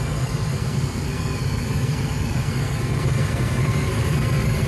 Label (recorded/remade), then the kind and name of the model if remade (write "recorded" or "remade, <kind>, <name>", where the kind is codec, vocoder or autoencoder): remade, codec, SNAC